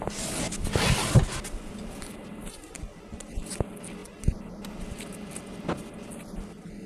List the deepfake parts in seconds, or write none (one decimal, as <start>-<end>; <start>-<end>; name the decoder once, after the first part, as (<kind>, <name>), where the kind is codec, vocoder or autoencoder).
none